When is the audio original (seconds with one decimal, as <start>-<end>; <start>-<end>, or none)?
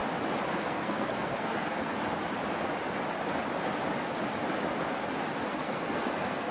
0.0-0.6; 2.0-5.5